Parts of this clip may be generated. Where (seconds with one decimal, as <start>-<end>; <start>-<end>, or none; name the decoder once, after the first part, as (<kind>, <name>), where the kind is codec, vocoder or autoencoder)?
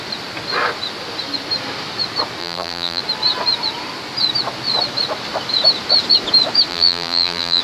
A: 2.4-3.0 (vocoder, BigVGAN v2); 6.7-7.6